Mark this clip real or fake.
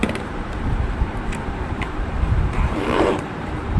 fake